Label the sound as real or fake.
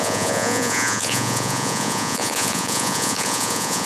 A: fake